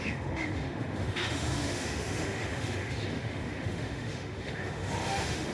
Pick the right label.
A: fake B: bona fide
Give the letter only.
A